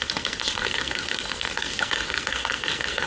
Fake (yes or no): yes